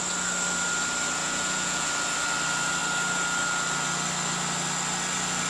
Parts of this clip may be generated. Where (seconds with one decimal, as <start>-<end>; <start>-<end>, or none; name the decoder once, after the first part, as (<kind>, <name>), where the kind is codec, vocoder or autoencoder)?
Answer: 1.2-1.9 (vocoder, Vocos)